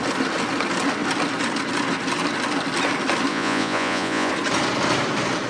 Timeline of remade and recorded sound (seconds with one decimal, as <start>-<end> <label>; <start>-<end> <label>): 0.0-3.3 recorded; 3.3-4.3 remade; 4.3-5.5 recorded